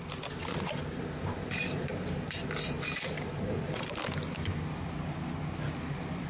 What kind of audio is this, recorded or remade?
recorded